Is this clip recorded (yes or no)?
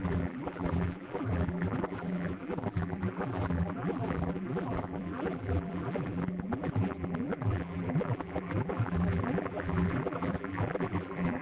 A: no